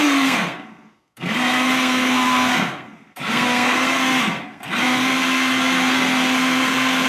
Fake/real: fake